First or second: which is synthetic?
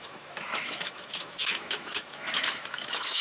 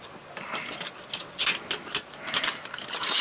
first